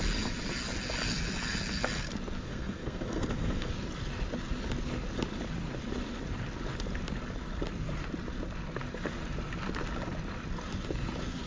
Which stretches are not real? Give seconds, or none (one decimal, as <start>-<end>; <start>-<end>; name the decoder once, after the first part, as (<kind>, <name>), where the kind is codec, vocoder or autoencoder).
2.4-3.7 (codec, SNAC)